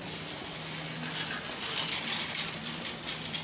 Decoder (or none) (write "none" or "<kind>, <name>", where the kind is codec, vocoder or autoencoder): none